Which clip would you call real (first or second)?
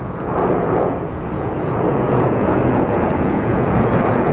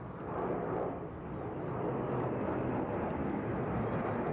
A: second